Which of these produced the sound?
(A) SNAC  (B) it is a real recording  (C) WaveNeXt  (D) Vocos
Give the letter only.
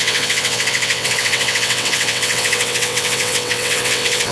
C